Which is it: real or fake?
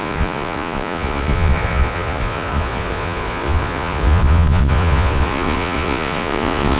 fake